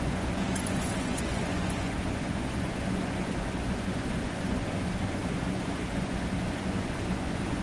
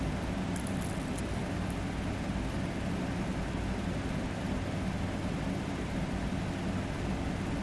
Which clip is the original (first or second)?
second